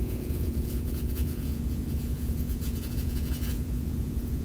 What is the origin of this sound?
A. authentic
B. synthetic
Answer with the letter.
B